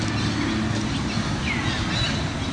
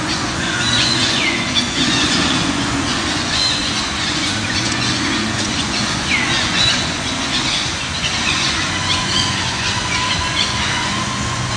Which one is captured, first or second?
first